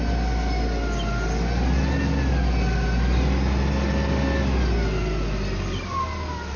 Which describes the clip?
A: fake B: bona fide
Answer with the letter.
B